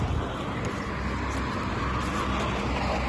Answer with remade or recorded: recorded